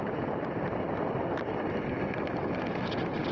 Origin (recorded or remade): recorded